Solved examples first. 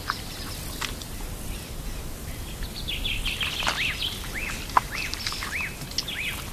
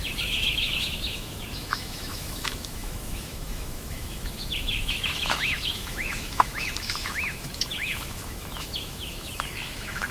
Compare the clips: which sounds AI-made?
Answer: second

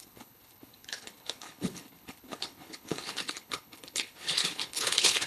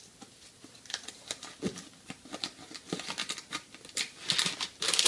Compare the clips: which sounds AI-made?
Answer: first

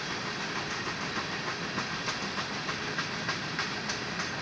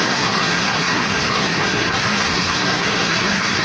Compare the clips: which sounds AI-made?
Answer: second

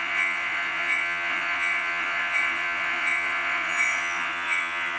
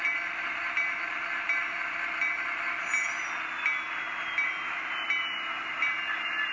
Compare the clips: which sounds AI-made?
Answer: first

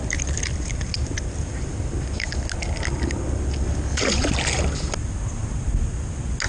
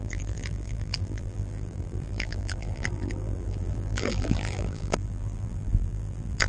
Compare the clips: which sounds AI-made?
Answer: second